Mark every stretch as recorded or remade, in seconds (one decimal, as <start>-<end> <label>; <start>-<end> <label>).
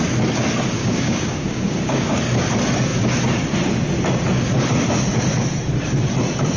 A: 0.0-0.8 recorded; 0.8-2.2 remade; 2.2-6.6 recorded